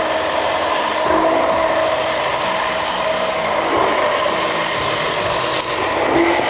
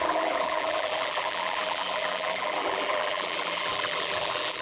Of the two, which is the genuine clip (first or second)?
first